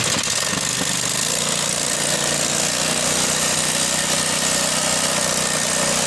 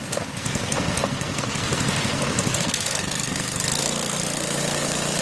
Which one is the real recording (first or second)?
first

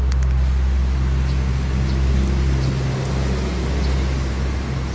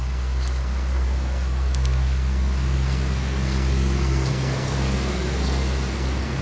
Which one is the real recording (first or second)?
first